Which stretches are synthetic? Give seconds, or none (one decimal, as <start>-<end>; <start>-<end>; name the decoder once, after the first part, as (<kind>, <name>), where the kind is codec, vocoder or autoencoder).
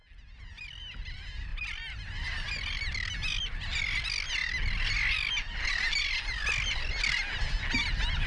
1.5-2.2 (vocoder, BigVGAN v2)